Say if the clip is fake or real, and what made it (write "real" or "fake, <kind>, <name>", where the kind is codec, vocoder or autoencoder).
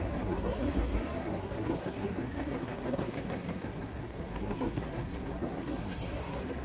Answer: fake, codec, SNAC